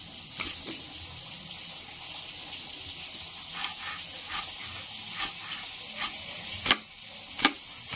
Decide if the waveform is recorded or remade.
recorded